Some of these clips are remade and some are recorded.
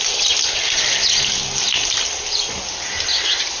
recorded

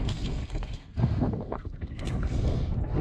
remade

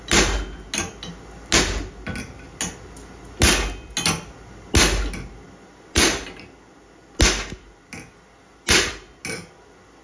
recorded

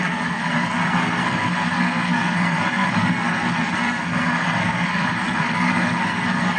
remade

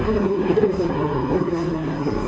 remade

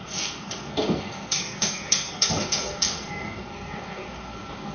remade